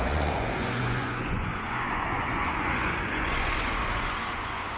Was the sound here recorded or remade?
remade